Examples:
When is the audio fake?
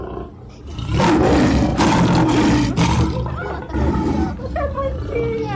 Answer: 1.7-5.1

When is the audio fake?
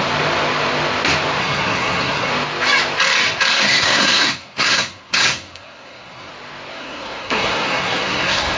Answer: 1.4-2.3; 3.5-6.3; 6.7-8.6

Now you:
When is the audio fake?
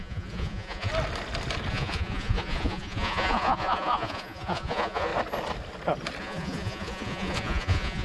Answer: 0.0-0.9; 1.7-5.1; 6.2-8.0